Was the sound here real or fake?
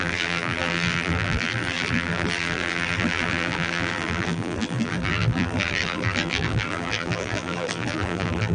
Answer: fake